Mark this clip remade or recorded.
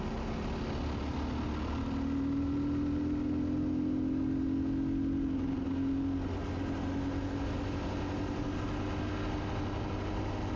recorded